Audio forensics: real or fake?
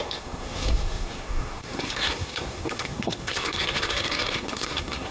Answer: fake